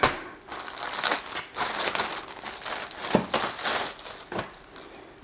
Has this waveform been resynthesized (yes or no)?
no